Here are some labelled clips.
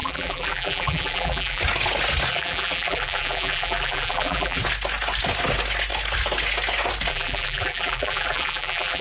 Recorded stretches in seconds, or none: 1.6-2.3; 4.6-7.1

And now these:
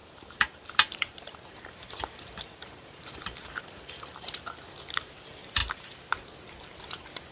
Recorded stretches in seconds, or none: 4.4-7.3

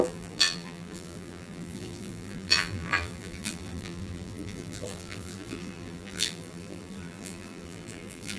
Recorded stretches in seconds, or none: none

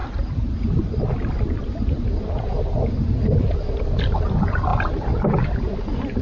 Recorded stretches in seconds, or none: 0.0-4.7; 5.6-6.2

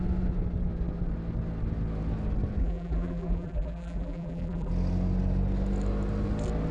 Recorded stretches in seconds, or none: 0.0-2.6; 4.7-6.7

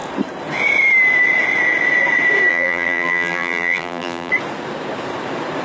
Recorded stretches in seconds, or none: 0.0-2.5; 4.3-5.6

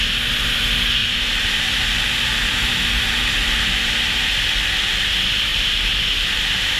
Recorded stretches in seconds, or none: 0.0-1.0; 3.9-5.5

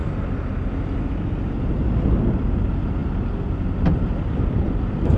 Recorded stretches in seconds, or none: 0.0-5.2